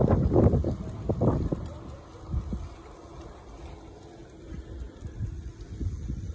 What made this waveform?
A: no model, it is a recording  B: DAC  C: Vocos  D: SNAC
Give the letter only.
A